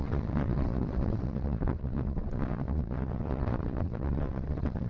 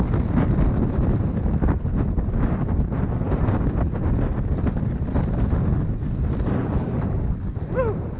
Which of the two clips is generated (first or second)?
first